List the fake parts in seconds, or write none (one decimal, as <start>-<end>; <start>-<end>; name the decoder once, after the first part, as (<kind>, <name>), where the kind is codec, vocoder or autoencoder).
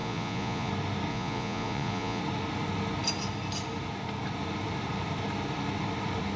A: 0.0-0.7 (vocoder, Vocos); 1.1-2.2